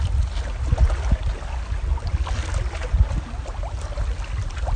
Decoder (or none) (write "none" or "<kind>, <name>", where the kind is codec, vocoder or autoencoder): none